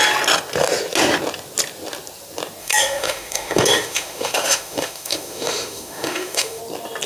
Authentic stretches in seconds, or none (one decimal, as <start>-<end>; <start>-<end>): 0.0-2.6; 6.6-7.1